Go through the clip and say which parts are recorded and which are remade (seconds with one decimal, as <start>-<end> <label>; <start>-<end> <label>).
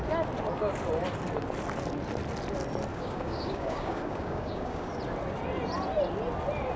0.0-2.9 recorded; 2.9-4.9 remade; 4.9-6.8 recorded